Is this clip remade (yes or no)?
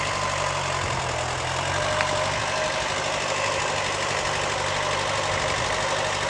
no